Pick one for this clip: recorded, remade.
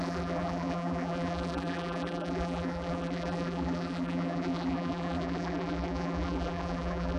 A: remade